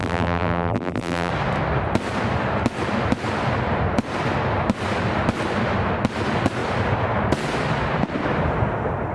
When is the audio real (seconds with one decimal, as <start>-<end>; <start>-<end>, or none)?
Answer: 1.3-9.1